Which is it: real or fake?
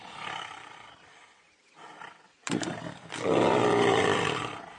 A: fake